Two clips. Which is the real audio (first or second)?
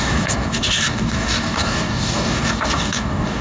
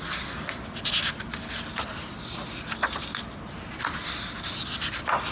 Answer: second